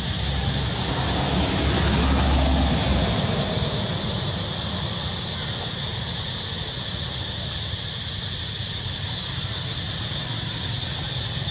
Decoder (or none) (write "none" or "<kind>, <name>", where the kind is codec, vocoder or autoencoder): none